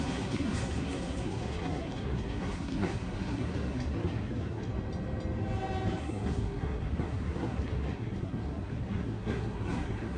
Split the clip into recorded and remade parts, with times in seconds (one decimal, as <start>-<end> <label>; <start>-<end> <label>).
0.0-4.7 remade; 4.7-6.0 recorded; 6.0-10.2 remade